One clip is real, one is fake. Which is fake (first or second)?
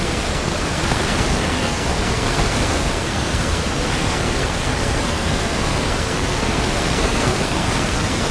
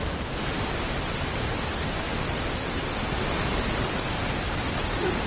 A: first